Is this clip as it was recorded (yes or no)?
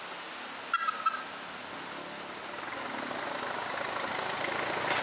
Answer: yes